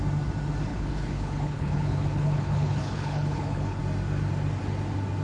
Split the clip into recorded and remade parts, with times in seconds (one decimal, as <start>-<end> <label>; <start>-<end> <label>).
0.0-0.7 recorded; 0.7-3.8 remade; 3.8-5.2 recorded